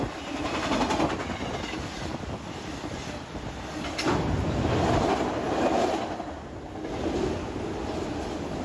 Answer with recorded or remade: recorded